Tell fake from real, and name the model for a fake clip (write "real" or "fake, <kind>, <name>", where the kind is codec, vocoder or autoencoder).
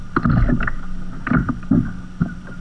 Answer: real